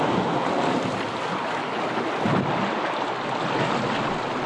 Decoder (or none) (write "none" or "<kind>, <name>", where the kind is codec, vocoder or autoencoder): none